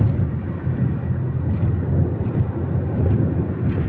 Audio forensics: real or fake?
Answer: real